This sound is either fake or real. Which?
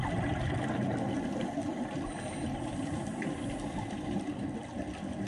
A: real